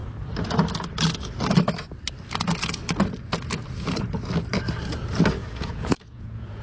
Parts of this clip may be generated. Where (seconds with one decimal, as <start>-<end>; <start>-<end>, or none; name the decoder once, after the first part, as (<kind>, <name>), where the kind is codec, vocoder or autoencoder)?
5.4-6.6 (vocoder, Vocos)